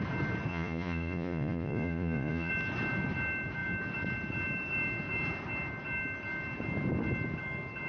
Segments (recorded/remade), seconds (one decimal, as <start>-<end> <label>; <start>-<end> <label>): 0.0-0.5 recorded; 0.5-2.5 remade; 2.5-7.9 recorded